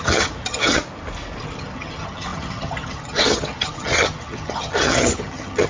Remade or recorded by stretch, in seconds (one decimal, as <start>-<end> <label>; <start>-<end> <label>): 0.0-0.8 remade; 0.8-1.4 recorded; 1.4-5.7 remade